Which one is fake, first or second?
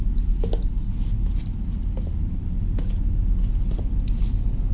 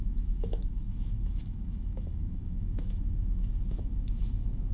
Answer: second